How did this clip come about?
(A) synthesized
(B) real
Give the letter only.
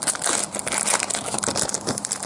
B